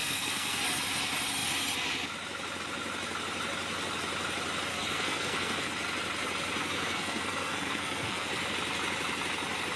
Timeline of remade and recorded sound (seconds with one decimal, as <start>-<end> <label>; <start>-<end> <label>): 0.0-0.6 remade; 0.6-4.7 recorded; 4.7-5.7 remade; 5.7-6.6 recorded; 6.6-8.3 remade; 8.3-9.8 recorded